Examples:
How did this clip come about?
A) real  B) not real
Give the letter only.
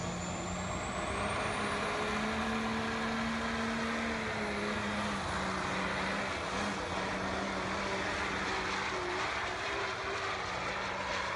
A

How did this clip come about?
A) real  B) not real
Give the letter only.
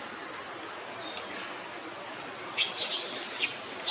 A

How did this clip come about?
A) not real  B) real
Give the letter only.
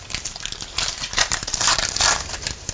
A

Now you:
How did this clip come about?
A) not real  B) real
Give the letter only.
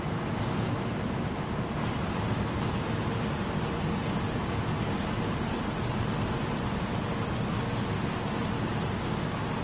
B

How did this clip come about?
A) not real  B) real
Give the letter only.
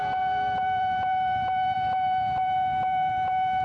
A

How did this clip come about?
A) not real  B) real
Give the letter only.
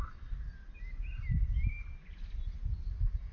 B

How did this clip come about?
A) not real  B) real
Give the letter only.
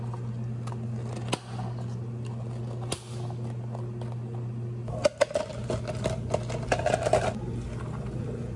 B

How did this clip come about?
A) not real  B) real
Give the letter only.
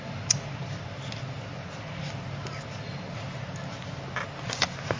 B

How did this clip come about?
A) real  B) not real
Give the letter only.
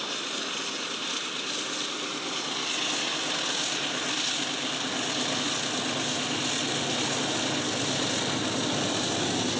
A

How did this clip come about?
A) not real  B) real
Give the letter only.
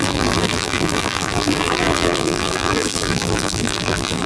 A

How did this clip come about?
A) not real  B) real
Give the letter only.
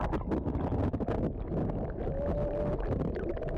B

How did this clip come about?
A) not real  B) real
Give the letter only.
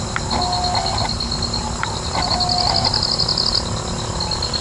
B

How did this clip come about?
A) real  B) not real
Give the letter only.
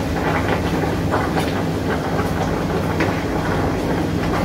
A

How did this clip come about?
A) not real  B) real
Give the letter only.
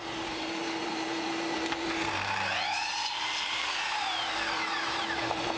A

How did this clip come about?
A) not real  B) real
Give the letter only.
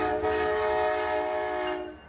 B